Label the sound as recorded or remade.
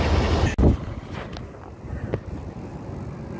recorded